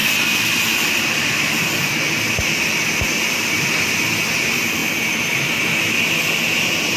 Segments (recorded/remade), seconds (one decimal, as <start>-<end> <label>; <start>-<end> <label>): 0.0-4.2 remade; 4.2-7.0 recorded